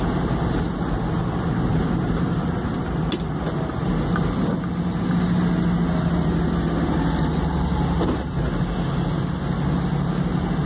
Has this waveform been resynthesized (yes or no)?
no